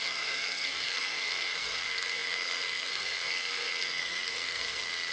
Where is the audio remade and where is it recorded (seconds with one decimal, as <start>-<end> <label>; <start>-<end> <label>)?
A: 0.0-5.1 remade